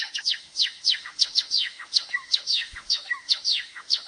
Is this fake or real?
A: fake